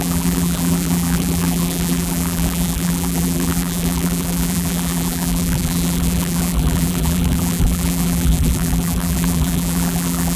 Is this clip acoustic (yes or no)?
no